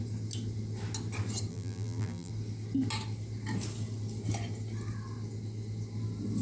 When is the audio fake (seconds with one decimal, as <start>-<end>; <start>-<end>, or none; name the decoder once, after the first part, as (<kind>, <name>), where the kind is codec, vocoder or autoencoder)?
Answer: 1.5-2.3 (vocoder, BigVGAN v2)